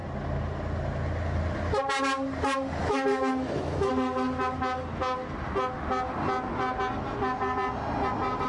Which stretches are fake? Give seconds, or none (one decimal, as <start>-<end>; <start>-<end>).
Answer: 2.8-3.9